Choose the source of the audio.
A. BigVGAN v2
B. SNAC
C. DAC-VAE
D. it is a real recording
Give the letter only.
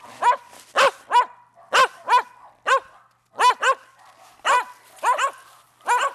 D